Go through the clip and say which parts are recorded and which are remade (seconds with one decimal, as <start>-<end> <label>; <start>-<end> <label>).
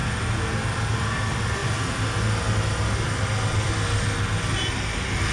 0.0-5.3 recorded